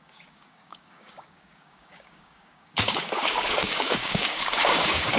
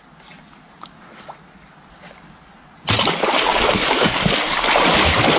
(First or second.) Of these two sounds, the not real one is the first